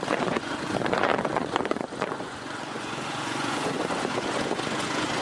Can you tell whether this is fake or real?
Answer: fake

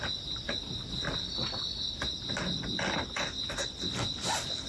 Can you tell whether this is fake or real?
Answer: real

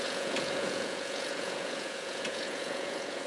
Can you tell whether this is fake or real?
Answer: fake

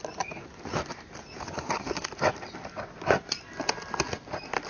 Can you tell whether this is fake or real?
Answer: real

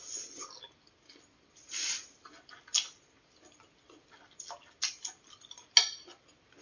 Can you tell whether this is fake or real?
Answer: real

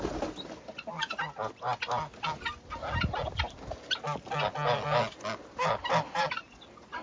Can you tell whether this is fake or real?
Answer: real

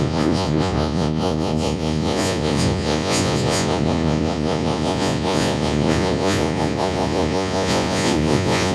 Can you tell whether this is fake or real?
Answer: fake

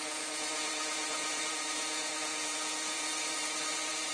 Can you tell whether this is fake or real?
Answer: fake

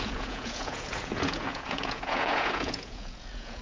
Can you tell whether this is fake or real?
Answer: fake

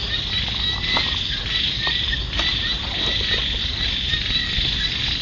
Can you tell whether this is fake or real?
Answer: real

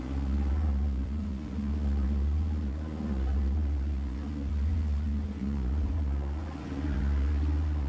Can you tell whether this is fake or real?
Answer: fake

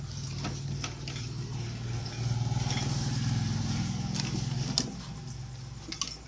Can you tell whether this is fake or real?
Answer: real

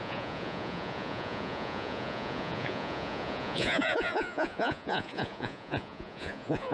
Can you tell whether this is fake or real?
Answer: fake